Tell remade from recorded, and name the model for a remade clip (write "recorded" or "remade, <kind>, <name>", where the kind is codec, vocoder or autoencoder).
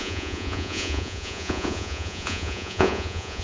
remade, vocoder, Vocos